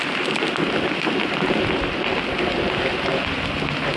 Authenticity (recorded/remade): recorded